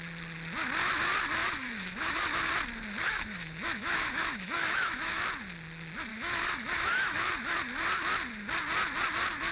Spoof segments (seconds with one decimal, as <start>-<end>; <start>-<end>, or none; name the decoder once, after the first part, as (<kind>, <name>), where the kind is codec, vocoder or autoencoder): 1.4-2.4 (autoencoder, DAC-VAE); 3.0-5.2; 6.1-7.3